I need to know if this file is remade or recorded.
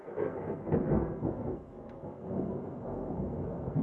remade